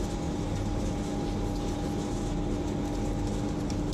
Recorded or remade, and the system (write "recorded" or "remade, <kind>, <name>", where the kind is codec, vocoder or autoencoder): recorded